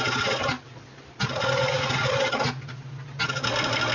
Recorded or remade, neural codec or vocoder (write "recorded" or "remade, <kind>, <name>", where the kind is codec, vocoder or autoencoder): recorded